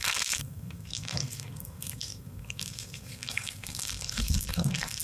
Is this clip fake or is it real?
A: fake